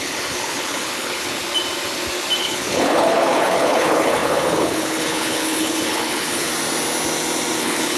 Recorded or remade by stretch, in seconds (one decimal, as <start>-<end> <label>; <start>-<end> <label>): 0.0-1.4 remade; 1.4-2.4 recorded; 2.4-6.5 remade; 6.5-7.6 recorded; 7.6-8.0 remade